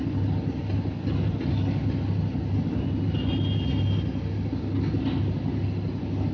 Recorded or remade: recorded